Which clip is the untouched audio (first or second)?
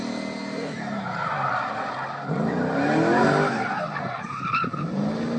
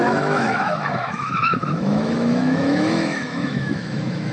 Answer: first